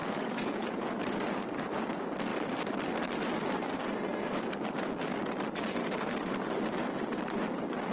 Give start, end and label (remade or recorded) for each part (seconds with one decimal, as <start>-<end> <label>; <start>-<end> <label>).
0.0-1.0 remade; 1.0-5.8 recorded; 5.8-6.3 remade; 6.3-7.9 recorded